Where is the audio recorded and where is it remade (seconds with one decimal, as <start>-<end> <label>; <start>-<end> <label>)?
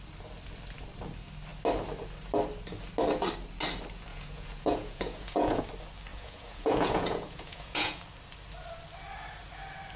0.0-4.1 recorded; 4.1-5.6 remade; 5.6-6.1 recorded; 6.1-8.0 remade; 8.0-10.0 recorded